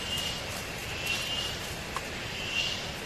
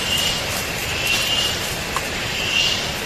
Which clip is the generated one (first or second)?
second